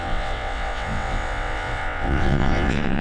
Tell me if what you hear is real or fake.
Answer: fake